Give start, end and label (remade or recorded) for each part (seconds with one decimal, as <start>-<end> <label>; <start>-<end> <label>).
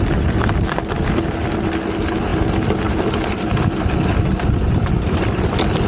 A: 0.0-5.9 recorded